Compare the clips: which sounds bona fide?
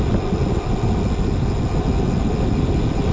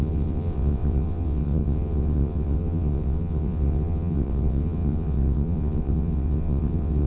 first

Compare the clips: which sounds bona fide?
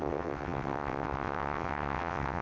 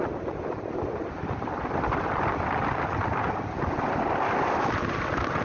second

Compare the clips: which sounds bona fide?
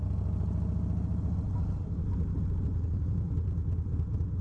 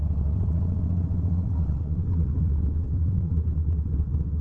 first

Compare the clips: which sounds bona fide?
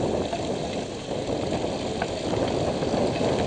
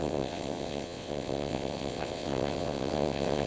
first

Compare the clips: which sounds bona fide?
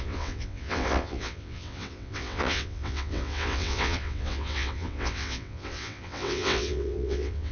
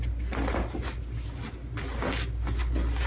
second